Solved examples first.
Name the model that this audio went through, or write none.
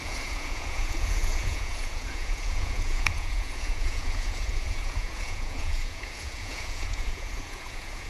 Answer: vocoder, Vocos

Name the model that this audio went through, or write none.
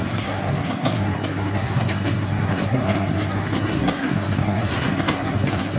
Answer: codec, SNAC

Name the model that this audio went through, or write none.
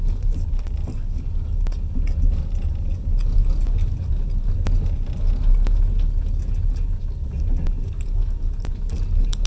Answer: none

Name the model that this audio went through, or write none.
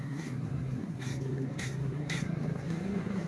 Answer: codec, SNAC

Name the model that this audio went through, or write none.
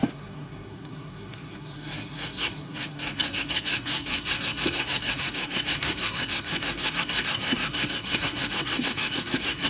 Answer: codec, SNAC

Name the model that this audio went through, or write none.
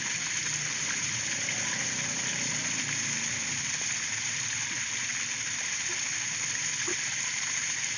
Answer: none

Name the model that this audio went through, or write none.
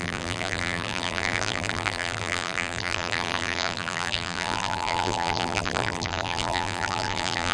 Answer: vocoder, BigVGAN v2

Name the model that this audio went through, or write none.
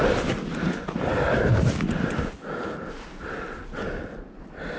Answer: none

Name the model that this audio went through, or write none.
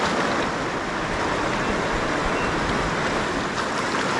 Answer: none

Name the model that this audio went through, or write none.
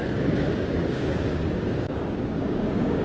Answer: codec, DAC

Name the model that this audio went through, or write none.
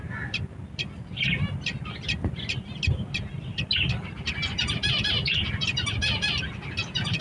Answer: none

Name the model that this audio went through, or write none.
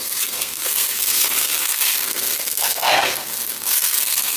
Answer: codec, SNAC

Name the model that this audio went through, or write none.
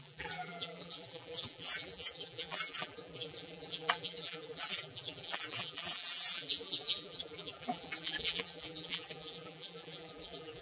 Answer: vocoder, BigVGAN v2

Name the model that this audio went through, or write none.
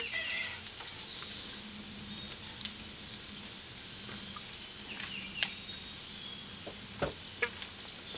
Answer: none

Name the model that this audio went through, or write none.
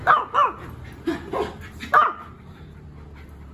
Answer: none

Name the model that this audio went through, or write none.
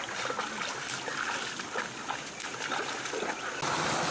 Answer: none